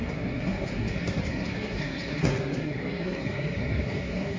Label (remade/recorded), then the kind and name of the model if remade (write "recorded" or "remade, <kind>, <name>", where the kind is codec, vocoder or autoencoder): remade, codec, SNAC